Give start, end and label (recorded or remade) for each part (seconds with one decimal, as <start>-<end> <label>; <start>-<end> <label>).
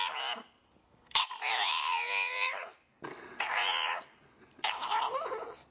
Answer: 0.0-0.8 recorded; 0.8-1.3 remade; 1.3-5.7 recorded